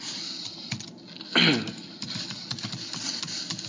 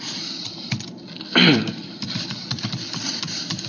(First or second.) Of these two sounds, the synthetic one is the second